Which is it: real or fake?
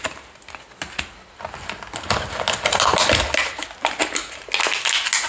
real